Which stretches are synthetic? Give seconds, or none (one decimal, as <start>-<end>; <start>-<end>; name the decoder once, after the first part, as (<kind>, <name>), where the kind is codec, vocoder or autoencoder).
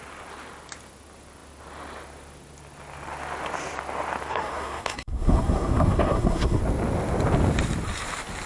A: 4.3-6.6 (codec, SNAC)